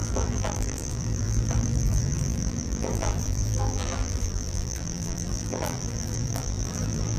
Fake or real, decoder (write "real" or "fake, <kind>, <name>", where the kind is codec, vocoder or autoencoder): fake, vocoder, BigVGAN v2